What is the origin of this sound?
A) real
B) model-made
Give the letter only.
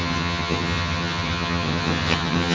B